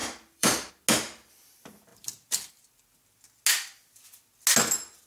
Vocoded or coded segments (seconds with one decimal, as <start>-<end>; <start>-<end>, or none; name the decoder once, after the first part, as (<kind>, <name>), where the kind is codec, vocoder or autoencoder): 0.0-0.7 (vocoder, BigVGAN v2); 1.9-2.5